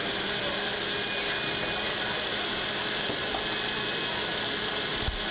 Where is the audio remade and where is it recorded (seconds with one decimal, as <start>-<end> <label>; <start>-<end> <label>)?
0.0-5.3 recorded